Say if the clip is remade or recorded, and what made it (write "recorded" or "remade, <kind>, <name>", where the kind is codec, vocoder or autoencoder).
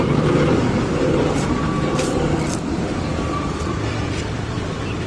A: remade, vocoder, BigVGAN v2